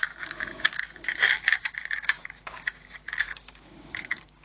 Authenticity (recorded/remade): remade